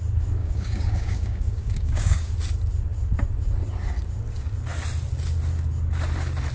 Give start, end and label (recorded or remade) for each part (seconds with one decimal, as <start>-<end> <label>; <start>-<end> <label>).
0.0-0.4 recorded; 0.4-2.3 remade; 2.3-6.5 recorded